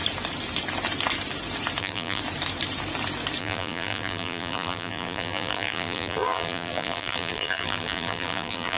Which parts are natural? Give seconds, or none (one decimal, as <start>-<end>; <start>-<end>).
0.0-1.8; 2.2-3.4